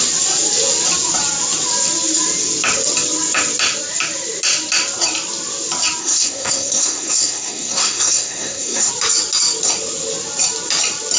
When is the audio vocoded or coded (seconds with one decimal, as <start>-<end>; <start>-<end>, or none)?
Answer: 6.0-8.9